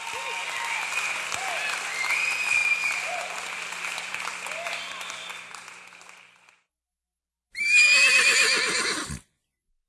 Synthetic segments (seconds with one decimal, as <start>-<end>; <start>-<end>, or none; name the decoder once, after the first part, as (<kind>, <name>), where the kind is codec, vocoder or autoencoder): 2.6-4.3 (vocoder, BigVGAN v2)